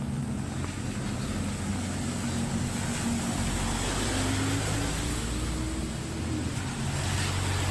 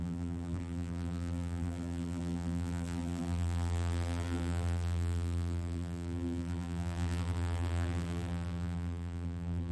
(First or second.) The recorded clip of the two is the first